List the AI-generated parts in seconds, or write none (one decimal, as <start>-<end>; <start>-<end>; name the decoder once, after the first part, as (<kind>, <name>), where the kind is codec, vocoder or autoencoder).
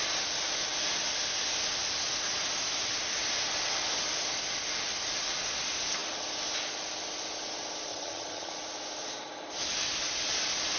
7.9-8.5 (vocoder, HiFi-GAN)